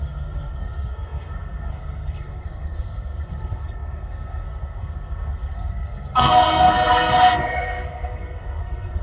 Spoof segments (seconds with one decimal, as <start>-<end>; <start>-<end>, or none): 0.0-9.0